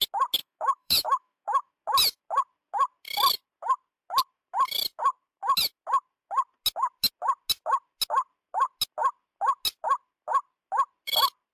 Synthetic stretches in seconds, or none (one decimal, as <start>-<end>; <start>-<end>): 0.4-1.7